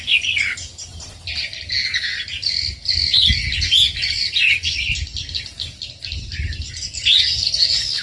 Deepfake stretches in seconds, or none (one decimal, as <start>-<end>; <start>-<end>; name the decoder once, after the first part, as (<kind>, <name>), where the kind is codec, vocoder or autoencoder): none